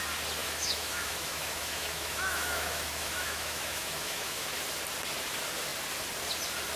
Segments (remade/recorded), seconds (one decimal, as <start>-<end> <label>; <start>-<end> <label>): 0.0-0.4 recorded; 0.4-4.5 remade; 4.5-6.8 recorded